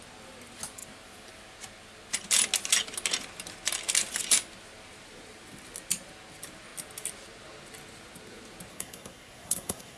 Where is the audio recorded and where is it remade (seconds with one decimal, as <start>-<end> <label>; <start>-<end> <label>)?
0.0-8.7 recorded; 8.7-10.0 remade